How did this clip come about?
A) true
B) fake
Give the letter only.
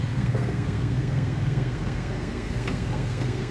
B